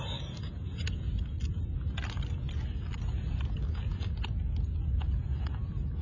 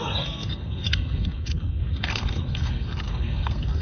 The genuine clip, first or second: first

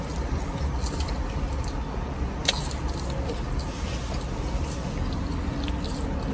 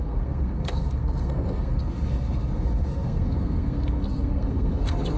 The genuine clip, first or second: first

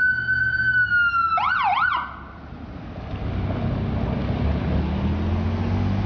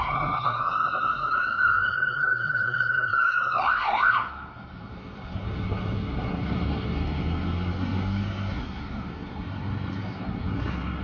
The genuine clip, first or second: first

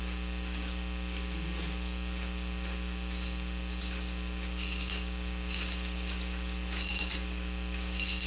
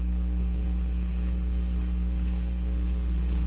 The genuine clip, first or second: first